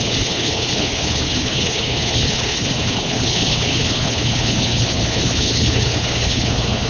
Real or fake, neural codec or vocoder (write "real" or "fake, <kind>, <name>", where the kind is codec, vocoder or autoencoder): fake, codec, HILCodec